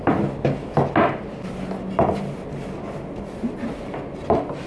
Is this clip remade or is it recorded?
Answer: recorded